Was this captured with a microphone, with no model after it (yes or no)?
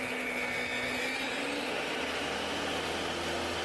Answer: yes